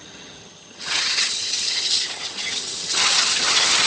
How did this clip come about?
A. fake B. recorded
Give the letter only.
A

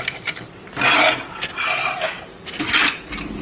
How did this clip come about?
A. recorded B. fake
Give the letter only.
A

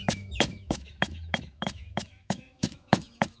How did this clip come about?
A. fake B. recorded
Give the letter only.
A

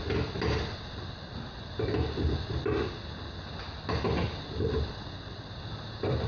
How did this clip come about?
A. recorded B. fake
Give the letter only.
A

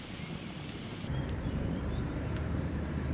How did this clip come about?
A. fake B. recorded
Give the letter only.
A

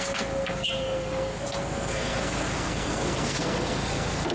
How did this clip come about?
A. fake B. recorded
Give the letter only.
A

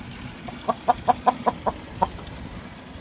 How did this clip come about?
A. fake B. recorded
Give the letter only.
B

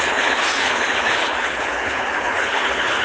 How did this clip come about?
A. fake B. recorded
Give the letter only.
A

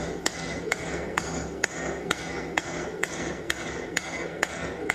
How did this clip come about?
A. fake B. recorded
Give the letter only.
A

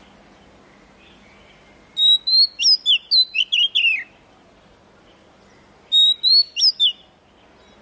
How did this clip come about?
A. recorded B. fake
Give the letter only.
A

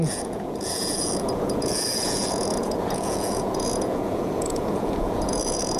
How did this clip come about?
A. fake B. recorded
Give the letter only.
A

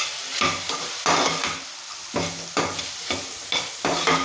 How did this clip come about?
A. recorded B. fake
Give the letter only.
A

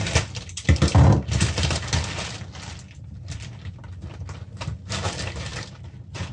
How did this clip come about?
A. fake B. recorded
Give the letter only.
B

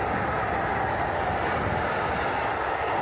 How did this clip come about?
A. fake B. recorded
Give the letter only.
B